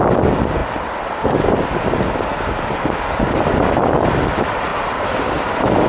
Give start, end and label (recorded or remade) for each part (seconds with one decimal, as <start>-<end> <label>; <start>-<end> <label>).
0.0-4.7 recorded; 4.7-5.4 remade; 5.4-5.9 recorded

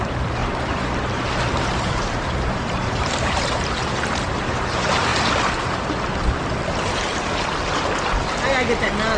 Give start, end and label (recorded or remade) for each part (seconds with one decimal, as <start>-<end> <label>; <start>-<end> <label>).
0.0-0.4 remade; 0.4-1.7 recorded; 1.7-5.1 remade; 5.1-9.2 recorded

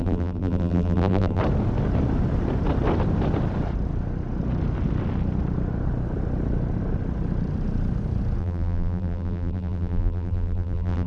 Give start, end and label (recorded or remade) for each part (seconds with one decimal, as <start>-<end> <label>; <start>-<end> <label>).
0.0-1.4 remade; 1.4-8.4 recorded; 8.4-11.1 remade

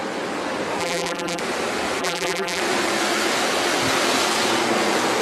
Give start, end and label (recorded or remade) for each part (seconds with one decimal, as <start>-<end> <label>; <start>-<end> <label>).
0.0-0.8 recorded; 0.8-1.4 remade; 1.4-2.0 recorded; 2.0-2.6 remade; 2.6-5.2 recorded